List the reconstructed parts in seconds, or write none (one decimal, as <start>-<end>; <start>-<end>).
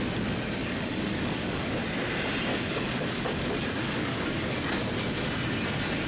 0.6-1.7; 2.5-4.5